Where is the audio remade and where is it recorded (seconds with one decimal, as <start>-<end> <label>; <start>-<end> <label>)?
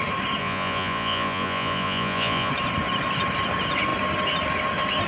0.0-0.4 recorded; 0.4-2.5 remade; 2.5-5.1 recorded